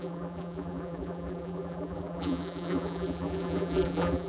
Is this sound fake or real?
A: fake